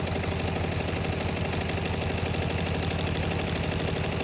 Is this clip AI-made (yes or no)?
no